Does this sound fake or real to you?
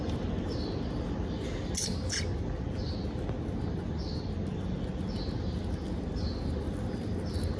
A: real